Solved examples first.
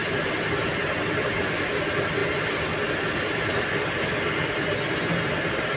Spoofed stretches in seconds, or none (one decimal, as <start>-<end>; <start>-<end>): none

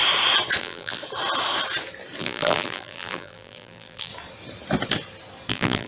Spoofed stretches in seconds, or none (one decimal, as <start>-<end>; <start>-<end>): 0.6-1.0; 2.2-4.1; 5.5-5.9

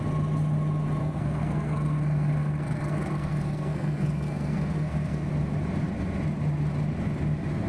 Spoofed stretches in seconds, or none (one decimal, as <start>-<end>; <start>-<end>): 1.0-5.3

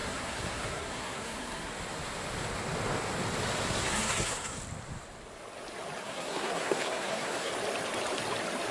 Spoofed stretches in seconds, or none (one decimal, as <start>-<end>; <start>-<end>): 0.0-1.7; 3.7-4.6; 6.0-7.5

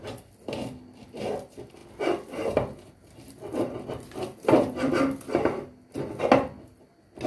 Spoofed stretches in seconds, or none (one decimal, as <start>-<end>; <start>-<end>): none